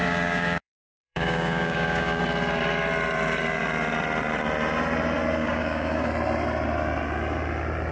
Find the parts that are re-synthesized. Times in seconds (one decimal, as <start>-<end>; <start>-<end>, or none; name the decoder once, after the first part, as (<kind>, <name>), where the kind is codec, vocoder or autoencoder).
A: 0.0-2.2 (codec, DAC); 5.4-6.1